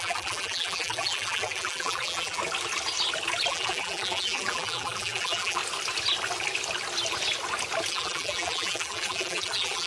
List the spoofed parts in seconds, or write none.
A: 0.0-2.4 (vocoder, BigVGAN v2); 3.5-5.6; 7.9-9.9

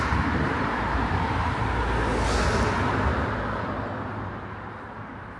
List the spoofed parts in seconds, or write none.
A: 0.0-1.8 (vocoder, BigVGAN v2); 5.0-5.4